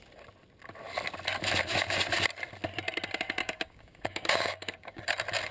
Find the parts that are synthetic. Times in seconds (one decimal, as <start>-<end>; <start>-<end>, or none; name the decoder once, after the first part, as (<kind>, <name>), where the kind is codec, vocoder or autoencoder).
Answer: 3.4-5.0 (codec, DAC)